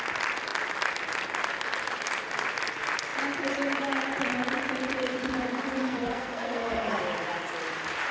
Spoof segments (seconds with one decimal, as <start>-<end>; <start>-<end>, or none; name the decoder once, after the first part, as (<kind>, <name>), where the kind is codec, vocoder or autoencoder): 5.8-6.9 (codec, SNAC)